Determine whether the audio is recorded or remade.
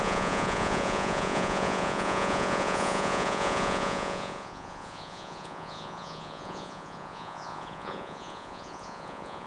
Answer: remade